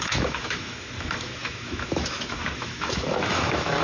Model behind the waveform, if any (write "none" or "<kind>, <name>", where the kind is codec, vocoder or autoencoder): autoencoder, DAC-VAE